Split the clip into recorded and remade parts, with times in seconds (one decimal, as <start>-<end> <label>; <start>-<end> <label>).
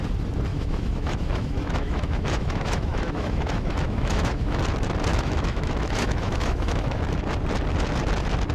0.0-0.5 recorded; 0.5-4.6 remade; 4.6-5.1 recorded; 5.1-7.0 remade; 7.0-8.5 recorded